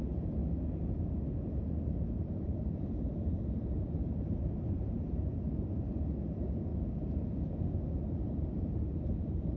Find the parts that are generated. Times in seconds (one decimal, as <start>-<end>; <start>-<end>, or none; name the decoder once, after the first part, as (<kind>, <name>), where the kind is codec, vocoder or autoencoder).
0.0-0.4 (vocoder, BigVGAN v2); 2.2-5.3; 6.2-6.7; 8.3-9.6